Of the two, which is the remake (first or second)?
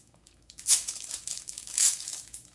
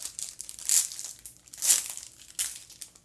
first